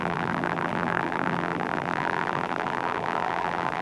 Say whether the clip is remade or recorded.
remade